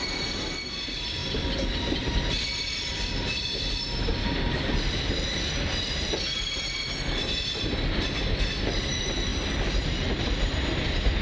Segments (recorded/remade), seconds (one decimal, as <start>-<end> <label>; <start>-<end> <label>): 0.0-11.2 recorded